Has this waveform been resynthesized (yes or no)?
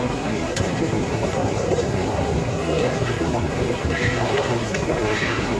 yes